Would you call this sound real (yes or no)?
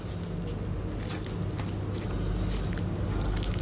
yes